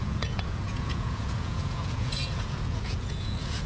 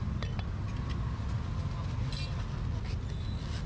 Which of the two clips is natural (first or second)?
second